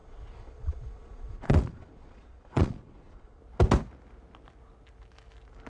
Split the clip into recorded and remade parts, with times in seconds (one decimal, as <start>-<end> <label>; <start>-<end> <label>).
0.0-3.4 remade; 3.4-5.7 recorded